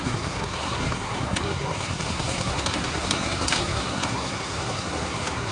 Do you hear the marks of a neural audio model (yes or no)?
yes